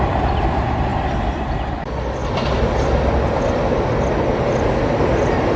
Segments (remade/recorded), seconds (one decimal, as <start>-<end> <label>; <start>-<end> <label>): 0.0-5.6 recorded